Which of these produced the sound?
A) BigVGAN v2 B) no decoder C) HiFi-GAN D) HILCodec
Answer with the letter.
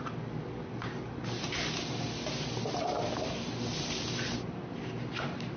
B